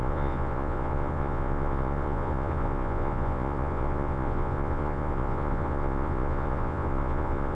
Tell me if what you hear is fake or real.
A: fake